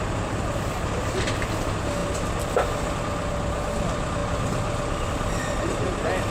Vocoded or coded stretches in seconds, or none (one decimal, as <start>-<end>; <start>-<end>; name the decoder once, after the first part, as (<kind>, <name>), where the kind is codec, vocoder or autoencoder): none